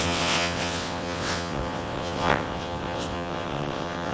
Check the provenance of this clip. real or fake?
fake